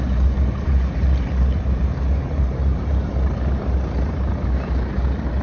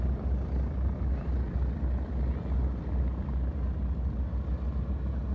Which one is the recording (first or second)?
second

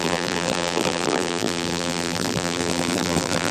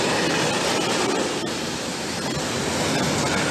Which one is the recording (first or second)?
second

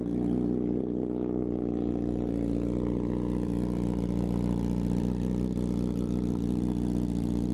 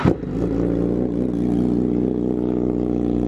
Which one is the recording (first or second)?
second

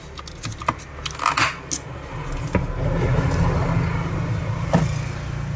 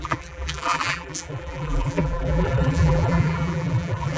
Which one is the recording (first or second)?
first